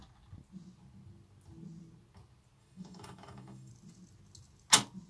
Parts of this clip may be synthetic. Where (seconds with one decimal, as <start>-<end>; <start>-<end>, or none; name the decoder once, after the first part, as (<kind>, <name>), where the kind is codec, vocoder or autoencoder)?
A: 2.6-3.7 (autoencoder, DAC-VAE)